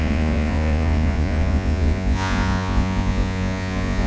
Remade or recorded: remade